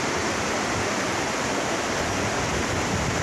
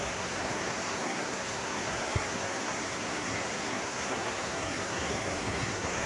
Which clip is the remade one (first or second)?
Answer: second